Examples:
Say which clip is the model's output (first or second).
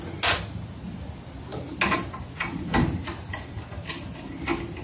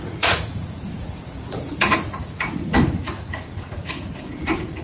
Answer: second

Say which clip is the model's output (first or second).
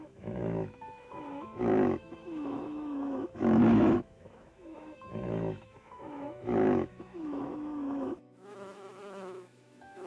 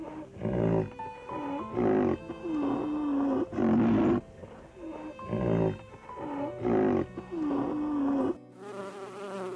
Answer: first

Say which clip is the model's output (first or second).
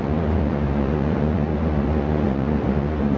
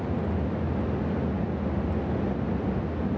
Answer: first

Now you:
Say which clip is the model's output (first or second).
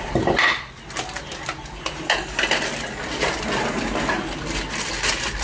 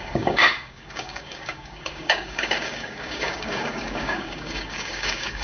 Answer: second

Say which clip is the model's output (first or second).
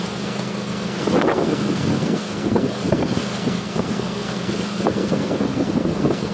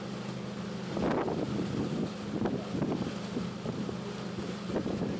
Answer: first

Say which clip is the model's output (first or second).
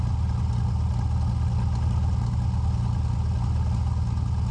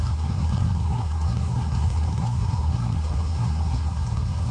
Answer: second